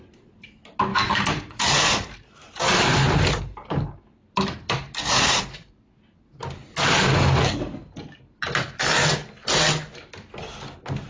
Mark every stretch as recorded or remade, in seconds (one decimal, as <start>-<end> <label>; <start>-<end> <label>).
0.0-0.9 recorded; 0.9-5.4 remade; 5.4-11.1 recorded